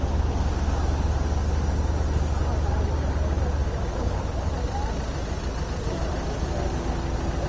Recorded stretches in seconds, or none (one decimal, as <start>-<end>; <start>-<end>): 0.0-3.9; 4.5-7.5